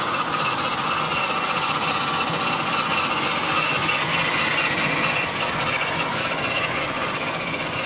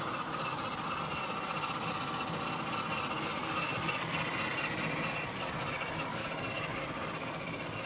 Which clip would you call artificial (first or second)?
first